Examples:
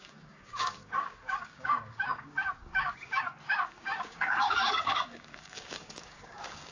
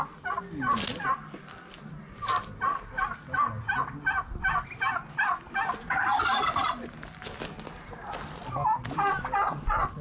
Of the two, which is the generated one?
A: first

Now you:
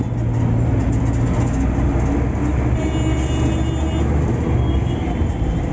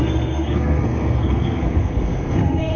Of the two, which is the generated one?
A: second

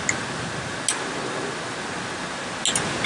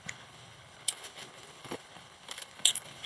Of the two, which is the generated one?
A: second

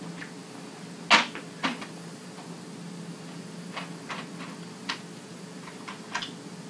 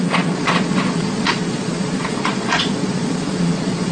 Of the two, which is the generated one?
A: second